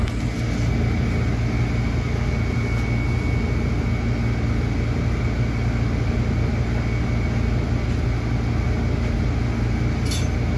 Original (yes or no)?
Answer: yes